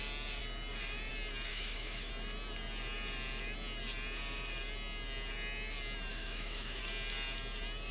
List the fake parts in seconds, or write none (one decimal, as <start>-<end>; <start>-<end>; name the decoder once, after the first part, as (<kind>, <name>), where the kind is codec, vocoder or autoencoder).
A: 1.5-2.1 (autoencoder, DAC-VAE); 6.1-6.8